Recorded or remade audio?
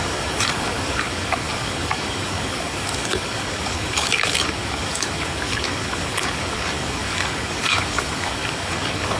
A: remade